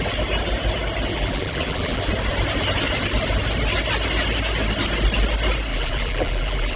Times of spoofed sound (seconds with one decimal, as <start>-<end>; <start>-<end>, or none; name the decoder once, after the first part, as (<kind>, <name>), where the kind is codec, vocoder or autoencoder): 1.1-2.1 (vocoder, BigVGAN v2); 5.7-6.8

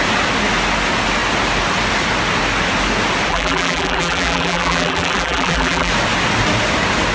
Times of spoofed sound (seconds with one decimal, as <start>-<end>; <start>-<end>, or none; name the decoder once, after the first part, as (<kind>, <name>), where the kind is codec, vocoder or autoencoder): 3.3-5.9 (vocoder, BigVGAN v2)